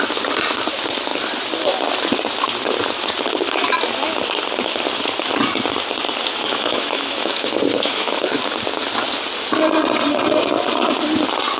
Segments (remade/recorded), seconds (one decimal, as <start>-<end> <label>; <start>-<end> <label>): 0.0-6.4 recorded; 6.4-8.4 remade; 8.4-11.6 recorded